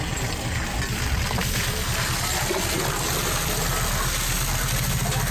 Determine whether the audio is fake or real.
real